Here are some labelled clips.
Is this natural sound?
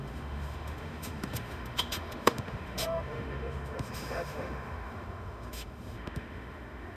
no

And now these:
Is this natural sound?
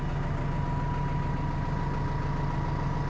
yes